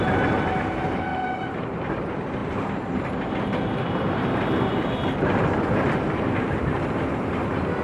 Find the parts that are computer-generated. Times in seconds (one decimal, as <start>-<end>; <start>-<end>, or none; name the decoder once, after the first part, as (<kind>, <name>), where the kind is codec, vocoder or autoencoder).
1.1-1.8 (vocoder, BigVGAN v2); 2.4-6.8